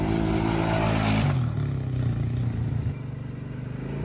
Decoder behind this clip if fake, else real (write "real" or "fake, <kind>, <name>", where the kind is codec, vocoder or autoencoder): real